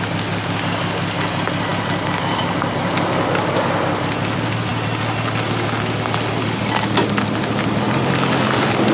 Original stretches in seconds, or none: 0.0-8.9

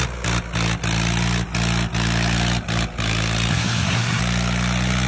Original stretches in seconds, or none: 0.0-3.5; 4.2-5.1

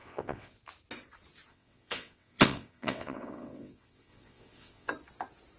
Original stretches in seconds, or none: 0.6-1.5; 4.9-5.6